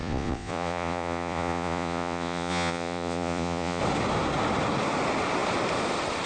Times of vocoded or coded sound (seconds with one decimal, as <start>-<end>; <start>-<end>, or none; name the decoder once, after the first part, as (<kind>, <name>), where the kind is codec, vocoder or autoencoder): 0.0-3.8 (vocoder, Vocos)